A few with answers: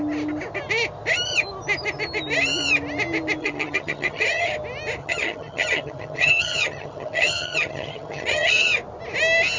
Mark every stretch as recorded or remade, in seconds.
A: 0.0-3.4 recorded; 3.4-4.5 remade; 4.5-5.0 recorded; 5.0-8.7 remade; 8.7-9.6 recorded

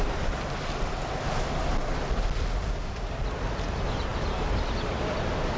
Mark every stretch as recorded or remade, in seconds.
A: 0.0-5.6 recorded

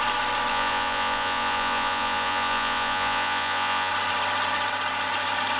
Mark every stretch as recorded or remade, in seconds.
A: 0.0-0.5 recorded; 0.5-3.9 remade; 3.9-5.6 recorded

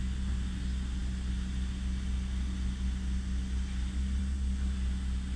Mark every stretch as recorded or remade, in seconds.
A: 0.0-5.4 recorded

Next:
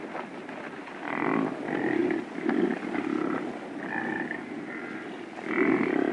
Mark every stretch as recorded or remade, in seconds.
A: 0.0-6.1 recorded

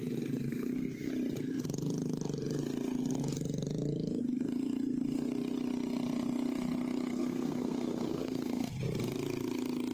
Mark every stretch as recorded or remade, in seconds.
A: 0.0-0.5 recorded; 0.5-1.1 remade; 1.1-7.1 recorded; 7.1-8.7 remade; 8.7-9.9 recorded